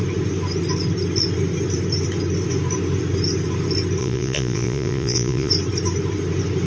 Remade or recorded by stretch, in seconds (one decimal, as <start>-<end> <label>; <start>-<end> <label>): 0.0-4.0 recorded; 4.0-5.5 remade; 5.5-6.7 recorded